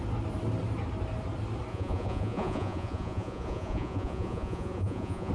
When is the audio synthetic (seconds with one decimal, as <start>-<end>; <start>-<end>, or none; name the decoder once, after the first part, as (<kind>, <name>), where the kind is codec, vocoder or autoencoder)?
1.7-5.3 (vocoder, Vocos)